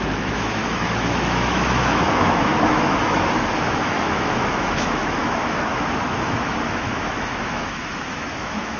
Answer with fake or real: fake